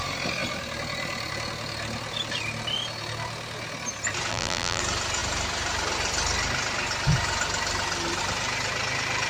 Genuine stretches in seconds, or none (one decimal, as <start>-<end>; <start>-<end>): 0.0-4.3; 4.8-9.3